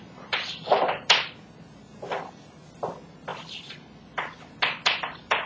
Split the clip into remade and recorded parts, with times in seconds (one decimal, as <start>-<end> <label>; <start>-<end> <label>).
0.0-3.3 recorded; 3.3-4.4 remade; 4.4-5.5 recorded